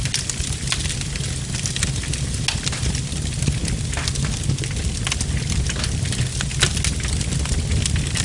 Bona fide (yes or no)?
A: yes